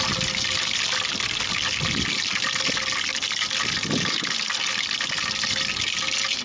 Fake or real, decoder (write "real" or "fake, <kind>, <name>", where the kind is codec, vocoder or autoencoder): real